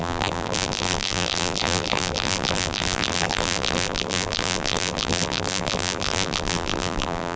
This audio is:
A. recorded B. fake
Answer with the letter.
B